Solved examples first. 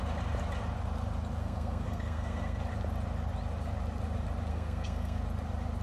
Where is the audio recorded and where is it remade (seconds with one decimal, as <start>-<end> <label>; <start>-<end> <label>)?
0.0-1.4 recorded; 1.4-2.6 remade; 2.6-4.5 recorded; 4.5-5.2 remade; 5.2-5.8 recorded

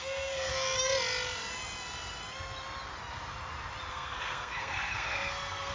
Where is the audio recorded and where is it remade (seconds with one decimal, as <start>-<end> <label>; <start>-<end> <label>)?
0.0-0.5 remade; 0.5-3.9 recorded; 3.9-5.7 remade

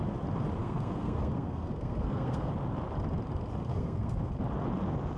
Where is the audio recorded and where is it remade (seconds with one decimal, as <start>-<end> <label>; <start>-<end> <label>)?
0.0-0.6 recorded; 0.6-2.5 remade; 2.5-3.7 recorded; 3.7-4.3 remade; 4.3-5.2 recorded

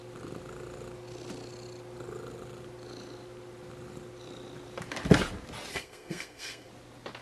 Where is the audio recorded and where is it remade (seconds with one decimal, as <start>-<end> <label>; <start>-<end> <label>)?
0.0-5.7 recorded; 5.7-6.7 remade; 6.7-7.2 recorded